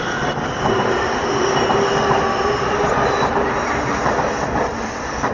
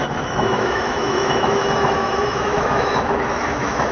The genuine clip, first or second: first